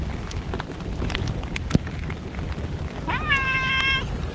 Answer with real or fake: real